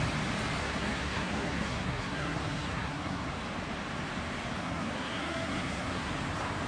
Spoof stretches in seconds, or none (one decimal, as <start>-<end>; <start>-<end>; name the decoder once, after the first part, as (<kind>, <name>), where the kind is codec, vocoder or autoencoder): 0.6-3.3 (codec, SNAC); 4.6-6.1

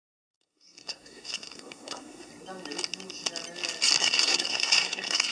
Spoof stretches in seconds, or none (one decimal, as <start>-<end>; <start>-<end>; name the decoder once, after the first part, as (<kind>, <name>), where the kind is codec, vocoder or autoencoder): 0.0-2.3 (codec, SNAC); 4.0-5.3

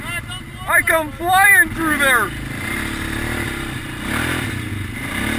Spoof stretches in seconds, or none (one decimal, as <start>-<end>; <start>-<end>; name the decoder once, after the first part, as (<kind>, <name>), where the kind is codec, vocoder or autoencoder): none

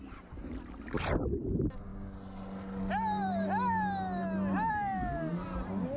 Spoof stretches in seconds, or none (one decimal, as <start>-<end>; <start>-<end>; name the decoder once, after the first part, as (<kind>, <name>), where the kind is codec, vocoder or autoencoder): none

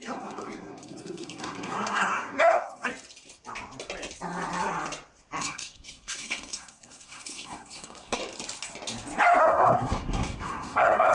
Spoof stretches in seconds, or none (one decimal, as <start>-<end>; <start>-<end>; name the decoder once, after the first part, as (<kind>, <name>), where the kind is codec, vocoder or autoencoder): 0.0-2.9 (codec, SNAC); 5.4-8.2; 9.4-11.1

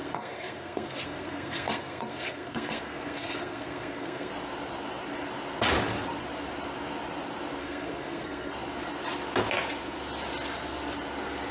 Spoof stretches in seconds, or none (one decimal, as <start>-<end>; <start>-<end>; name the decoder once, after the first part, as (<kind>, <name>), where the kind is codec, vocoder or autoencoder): 0.0-4.3 (codec, SNAC); 7.6-8.5

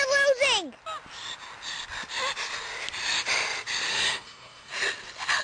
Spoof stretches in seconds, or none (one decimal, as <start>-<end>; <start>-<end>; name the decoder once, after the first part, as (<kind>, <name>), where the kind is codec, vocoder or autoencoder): 3.9-4.7 (codec, SNAC)

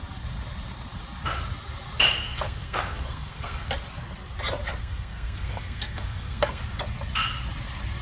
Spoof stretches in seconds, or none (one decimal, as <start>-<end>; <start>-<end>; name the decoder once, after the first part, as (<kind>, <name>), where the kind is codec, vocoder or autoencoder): 2.2-3.7 (codec, SNAC); 4.8-6.6